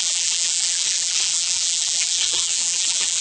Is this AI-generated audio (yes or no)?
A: yes